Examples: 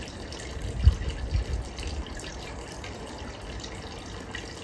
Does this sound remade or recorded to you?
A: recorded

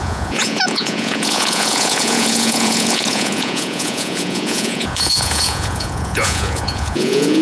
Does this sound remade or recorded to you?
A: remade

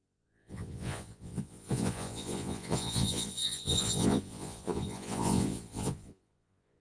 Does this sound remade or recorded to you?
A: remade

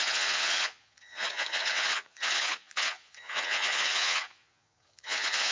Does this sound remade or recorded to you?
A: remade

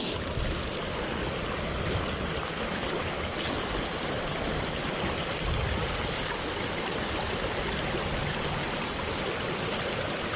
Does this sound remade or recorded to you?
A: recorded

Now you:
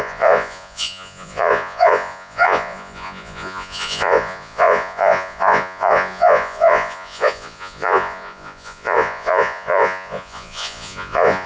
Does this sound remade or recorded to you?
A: remade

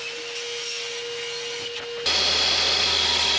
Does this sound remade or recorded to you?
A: recorded